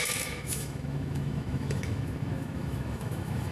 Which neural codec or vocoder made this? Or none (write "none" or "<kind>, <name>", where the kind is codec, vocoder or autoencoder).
autoencoder, DAC-VAE